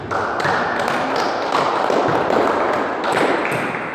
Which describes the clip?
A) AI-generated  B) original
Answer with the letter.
B